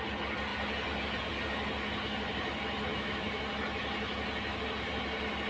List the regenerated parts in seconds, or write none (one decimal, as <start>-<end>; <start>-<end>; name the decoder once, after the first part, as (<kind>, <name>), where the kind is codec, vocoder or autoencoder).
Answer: 2.9-3.4 (autoencoder, DAC-VAE)